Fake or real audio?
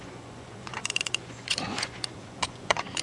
fake